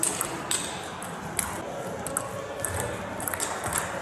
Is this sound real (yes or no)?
yes